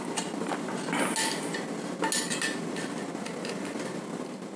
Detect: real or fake real